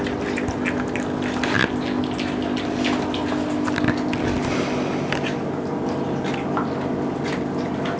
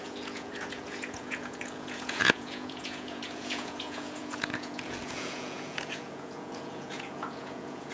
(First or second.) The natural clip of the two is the first